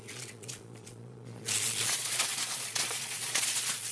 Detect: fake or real fake